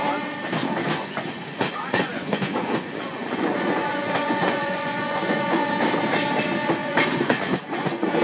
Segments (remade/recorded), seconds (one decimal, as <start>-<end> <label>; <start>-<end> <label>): 0.0-0.8 recorded; 0.8-5.7 remade; 5.7-6.8 recorded; 6.8-8.2 remade

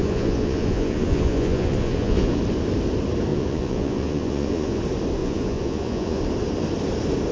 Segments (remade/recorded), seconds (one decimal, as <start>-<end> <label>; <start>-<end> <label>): 0.0-2.4 remade; 2.4-3.3 recorded; 3.3-4.8 remade; 4.8-5.2 recorded; 5.2-6.2 remade; 6.2-7.3 recorded

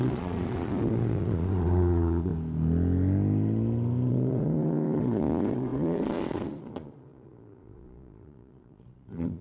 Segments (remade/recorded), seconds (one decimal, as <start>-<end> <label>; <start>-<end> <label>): 0.0-2.3 remade; 2.3-4.1 recorded; 4.1-9.4 remade